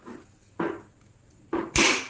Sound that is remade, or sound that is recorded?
recorded